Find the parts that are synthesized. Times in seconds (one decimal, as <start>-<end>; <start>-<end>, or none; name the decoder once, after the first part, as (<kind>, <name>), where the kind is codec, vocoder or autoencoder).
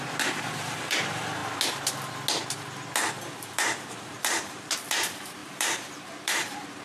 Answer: 0.0-1.4 (vocoder, BigVGAN v2); 3.5-6.8